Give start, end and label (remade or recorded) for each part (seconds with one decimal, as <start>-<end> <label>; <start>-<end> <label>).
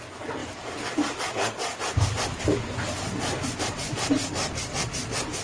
0.0-5.4 recorded